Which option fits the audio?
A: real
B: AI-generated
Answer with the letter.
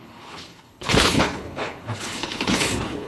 B